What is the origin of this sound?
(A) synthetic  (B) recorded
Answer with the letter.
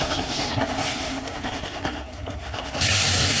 A